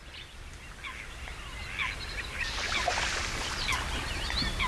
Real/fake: real